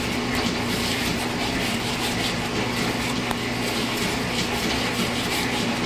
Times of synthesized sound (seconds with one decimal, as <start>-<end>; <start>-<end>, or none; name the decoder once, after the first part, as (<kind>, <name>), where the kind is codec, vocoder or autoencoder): none

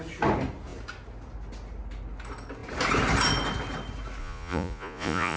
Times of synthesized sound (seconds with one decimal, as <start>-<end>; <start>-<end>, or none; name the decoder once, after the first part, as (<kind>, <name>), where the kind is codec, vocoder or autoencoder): 4.2-5.4 (vocoder, Vocos)

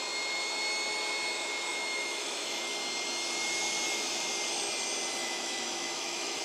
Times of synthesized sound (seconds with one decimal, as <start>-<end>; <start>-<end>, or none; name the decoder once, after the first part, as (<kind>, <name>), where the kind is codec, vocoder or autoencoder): 1.7-2.6 (autoencoder, DAC-VAE); 5.2-6.4

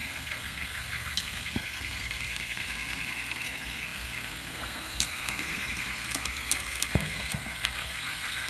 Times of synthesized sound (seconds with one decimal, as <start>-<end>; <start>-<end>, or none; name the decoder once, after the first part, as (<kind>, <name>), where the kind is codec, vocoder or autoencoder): 0.0-8.5 (codec, SNAC)